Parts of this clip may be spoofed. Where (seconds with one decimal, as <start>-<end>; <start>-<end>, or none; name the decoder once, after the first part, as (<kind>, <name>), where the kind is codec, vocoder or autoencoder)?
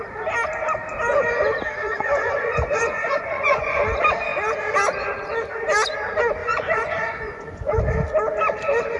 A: 1.8-3.8 (vocoder, Vocos); 6.4-7.8